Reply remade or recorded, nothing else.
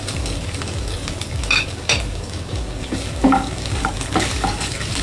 remade